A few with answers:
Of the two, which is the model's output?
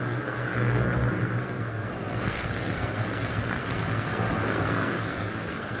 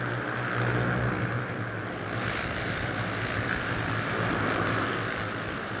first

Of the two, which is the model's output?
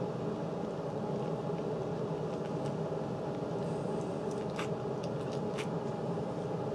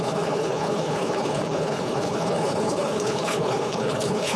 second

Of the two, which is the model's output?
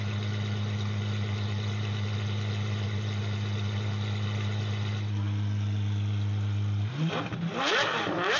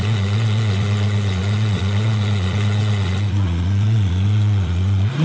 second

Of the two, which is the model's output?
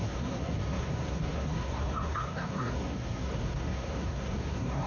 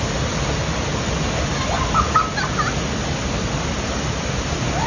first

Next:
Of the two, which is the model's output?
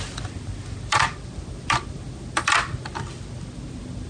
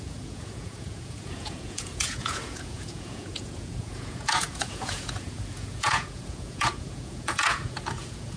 second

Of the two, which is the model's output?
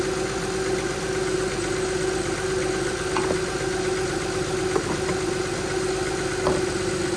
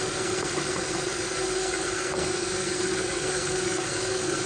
second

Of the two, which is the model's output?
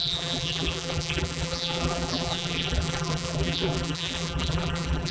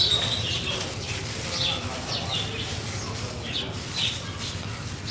first